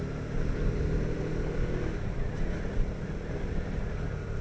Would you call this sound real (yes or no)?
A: yes